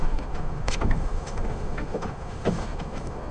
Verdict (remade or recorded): remade